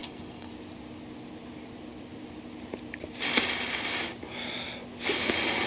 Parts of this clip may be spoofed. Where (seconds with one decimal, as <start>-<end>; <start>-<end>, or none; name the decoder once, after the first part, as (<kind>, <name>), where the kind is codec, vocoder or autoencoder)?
0.0-0.5 (codec, SNAC)